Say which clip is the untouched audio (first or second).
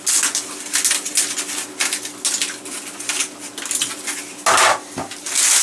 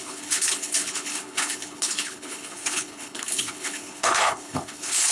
first